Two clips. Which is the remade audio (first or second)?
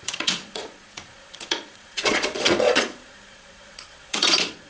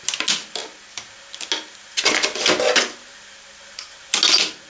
first